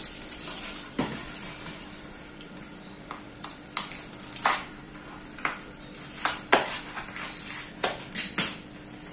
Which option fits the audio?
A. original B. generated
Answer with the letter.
B